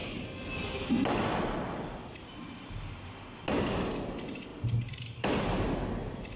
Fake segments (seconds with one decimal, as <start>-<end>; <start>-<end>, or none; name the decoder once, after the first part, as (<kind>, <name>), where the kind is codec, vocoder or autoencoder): 4.5-5.4 (vocoder, BigVGAN v2)